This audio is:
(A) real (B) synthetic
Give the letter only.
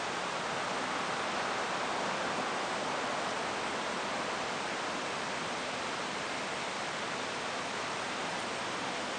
A